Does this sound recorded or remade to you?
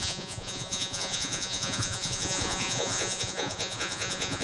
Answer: remade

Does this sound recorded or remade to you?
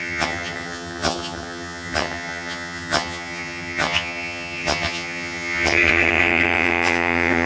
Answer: remade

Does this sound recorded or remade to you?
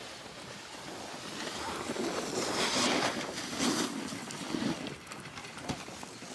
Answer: recorded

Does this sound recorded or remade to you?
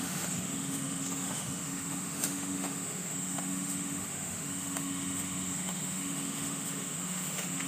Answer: remade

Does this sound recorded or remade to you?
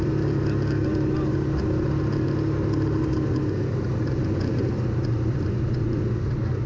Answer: recorded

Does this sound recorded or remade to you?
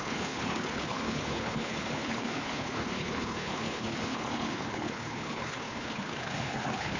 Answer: remade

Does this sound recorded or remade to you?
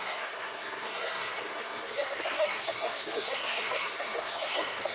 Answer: remade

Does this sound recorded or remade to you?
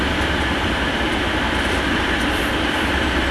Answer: recorded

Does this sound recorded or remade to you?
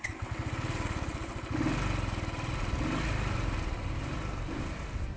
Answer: recorded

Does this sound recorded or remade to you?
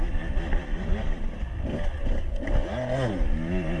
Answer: recorded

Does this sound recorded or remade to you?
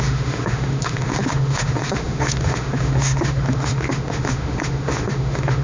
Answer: remade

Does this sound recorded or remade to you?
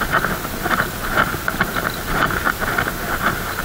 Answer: recorded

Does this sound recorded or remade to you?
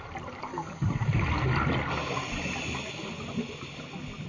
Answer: recorded